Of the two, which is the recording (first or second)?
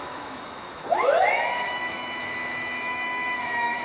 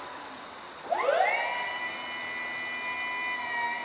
second